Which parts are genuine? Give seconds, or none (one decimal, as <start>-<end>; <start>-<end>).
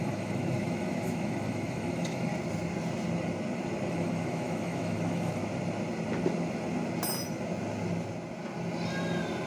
2.3-3.9; 5.4-9.5